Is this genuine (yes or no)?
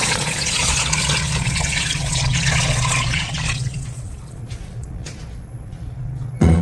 no